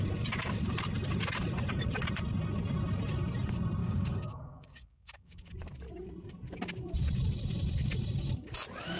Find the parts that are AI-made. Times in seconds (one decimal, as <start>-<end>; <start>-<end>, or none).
3.8-5.5